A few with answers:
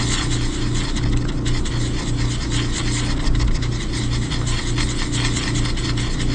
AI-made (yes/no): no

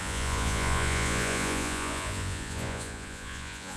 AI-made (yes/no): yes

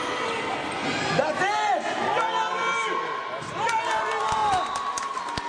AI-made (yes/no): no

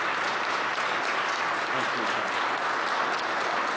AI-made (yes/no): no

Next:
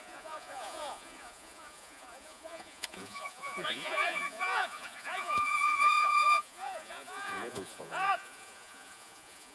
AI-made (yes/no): yes